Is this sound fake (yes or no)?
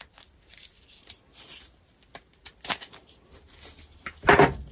no